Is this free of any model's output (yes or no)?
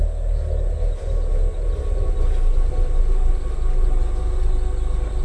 yes